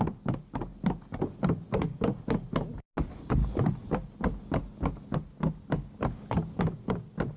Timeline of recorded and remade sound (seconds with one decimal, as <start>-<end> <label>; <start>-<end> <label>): 0.0-7.4 recorded